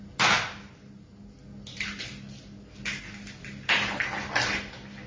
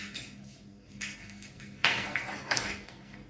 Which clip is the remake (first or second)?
second